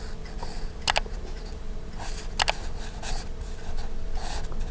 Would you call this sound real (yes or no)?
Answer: yes